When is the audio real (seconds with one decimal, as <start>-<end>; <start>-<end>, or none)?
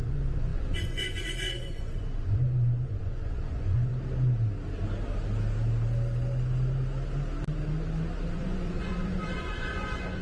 3.9-8.3